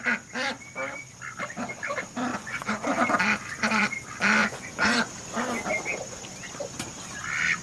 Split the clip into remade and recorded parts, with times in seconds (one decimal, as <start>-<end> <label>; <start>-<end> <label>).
0.0-2.3 recorded; 2.3-3.2 remade; 3.2-4.4 recorded; 4.4-5.1 remade; 5.1-7.6 recorded